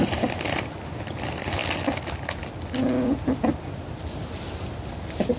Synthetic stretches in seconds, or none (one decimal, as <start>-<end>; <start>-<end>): none